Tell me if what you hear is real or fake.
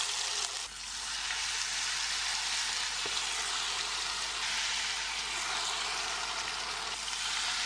real